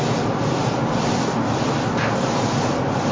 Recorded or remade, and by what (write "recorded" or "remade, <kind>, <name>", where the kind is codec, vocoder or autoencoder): recorded